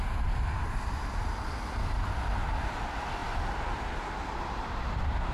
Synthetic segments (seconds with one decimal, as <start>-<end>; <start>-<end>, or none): none